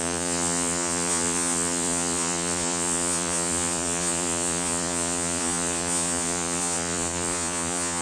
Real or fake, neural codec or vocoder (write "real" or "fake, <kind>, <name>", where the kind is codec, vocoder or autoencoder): fake, vocoder, Vocos